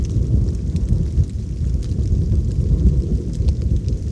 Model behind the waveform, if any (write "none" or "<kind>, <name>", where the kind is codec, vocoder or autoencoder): none